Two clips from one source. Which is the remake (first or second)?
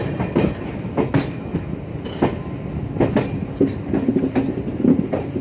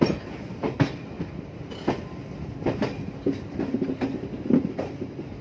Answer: second